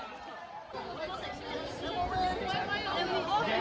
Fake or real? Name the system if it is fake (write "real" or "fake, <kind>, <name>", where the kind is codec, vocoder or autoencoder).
real